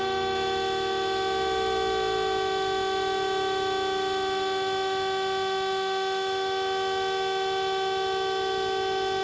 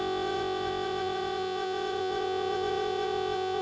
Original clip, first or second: first